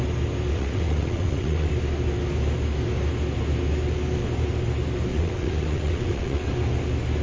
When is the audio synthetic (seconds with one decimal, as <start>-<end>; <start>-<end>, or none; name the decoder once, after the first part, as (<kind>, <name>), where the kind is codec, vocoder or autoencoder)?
0.5-1.7 (vocoder, WaveNeXt); 5.1-6.5